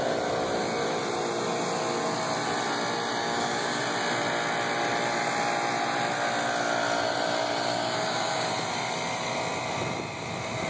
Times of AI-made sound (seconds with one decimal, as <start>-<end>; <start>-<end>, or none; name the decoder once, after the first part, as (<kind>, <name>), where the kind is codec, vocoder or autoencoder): 3.2-3.8 (codec, DAC); 7.7-8.5